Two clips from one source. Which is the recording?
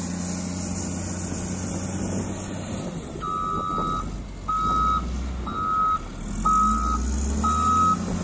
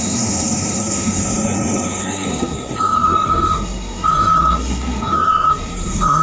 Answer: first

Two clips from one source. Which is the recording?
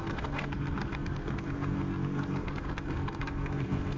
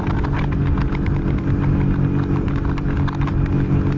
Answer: second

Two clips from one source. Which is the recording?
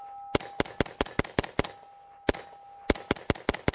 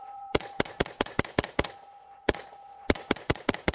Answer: first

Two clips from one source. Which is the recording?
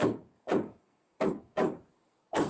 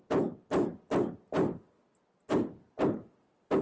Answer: second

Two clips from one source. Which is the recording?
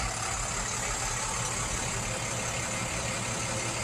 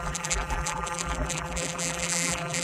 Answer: first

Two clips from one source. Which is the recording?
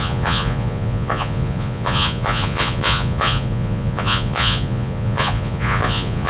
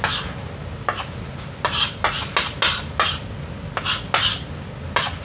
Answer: second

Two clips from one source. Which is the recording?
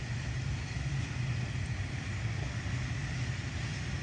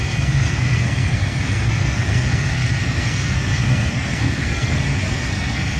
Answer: first